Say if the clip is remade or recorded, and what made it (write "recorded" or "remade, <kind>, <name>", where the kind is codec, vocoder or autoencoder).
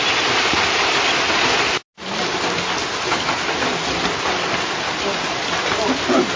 recorded